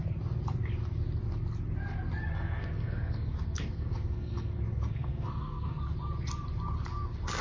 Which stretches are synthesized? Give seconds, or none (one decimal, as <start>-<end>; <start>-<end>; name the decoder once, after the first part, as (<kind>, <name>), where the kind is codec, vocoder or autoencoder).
2.3-5.8 (codec, SNAC)